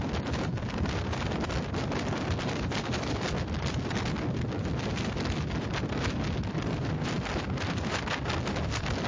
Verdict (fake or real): real